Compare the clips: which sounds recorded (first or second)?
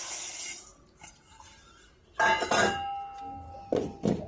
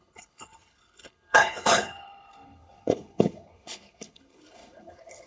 first